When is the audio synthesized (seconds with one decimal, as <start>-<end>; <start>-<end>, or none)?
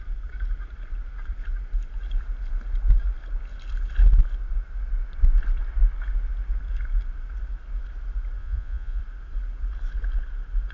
8.4-9.0